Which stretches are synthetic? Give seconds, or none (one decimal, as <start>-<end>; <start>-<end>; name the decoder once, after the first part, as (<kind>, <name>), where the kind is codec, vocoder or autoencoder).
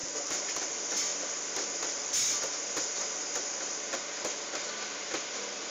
0.0-0.7 (vocoder, BigVGAN v2)